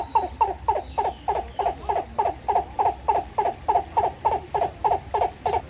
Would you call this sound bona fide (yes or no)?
yes